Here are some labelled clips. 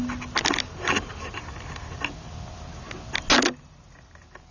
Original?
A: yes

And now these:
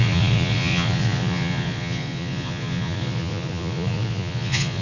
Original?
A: no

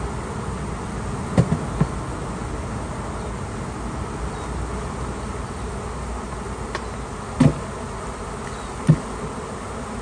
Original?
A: yes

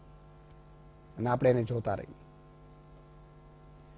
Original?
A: yes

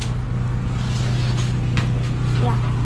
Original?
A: yes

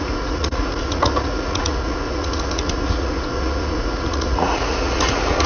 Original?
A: no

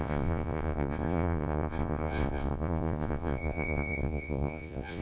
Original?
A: no